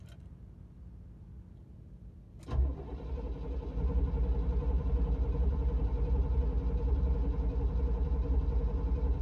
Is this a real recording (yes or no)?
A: yes